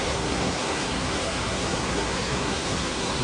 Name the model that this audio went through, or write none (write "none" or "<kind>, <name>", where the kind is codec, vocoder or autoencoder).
codec, SNAC